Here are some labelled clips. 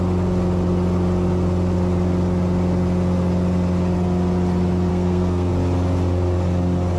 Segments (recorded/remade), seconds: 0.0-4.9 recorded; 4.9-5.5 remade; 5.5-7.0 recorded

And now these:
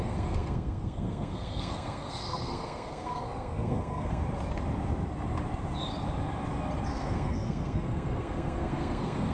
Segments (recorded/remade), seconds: 0.0-4.2 remade; 4.2-6.9 recorded; 6.9-9.3 remade

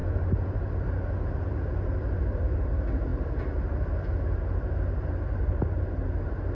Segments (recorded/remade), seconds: 0.0-6.5 recorded